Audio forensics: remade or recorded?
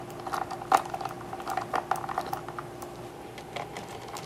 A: recorded